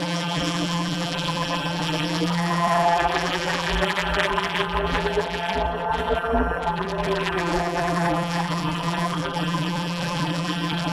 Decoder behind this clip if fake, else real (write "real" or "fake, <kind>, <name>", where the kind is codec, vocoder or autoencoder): fake, vocoder, BigVGAN v2